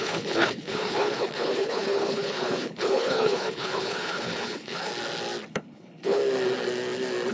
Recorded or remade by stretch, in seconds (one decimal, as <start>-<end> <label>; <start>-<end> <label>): 0.0-4.9 remade; 4.9-5.5 recorded; 5.5-6.2 remade; 6.2-7.3 recorded